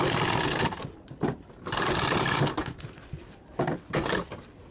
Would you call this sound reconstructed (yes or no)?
no